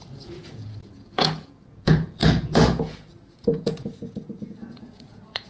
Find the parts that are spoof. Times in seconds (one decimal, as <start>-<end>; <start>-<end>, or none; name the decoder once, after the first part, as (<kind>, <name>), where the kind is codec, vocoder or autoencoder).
0.0-5.5 (vocoder, Vocos)